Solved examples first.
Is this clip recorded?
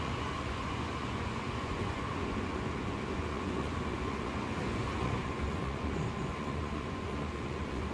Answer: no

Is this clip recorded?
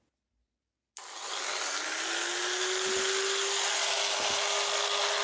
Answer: yes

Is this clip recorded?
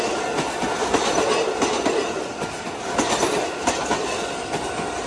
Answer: yes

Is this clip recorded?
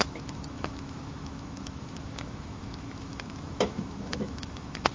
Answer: no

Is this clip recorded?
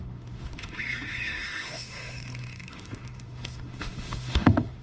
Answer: no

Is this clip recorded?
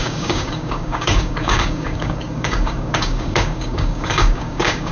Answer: no